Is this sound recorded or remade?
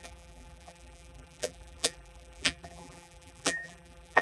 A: remade